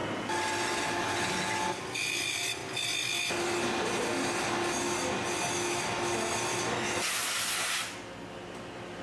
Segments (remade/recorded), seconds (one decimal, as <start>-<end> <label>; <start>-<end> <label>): 0.0-9.0 recorded